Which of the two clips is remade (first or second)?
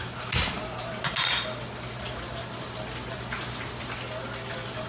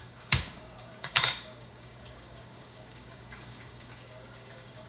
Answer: second